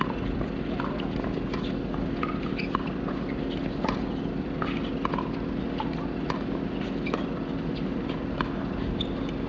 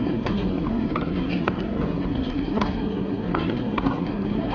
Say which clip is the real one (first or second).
first